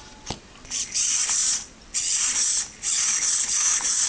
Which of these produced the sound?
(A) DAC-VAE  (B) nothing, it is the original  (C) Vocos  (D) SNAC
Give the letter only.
B